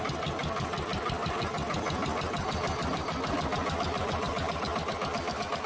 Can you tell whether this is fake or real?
real